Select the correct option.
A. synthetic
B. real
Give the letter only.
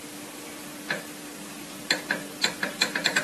A